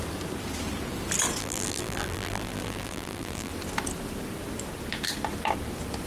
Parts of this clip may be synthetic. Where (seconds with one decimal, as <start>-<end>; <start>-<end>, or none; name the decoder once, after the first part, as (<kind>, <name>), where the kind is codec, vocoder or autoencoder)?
1.4-3.5 (vocoder, BigVGAN v2)